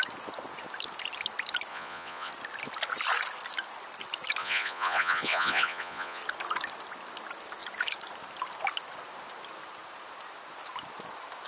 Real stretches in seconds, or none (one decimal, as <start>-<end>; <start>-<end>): 0.0-1.7; 2.3-4.4; 6.2-11.5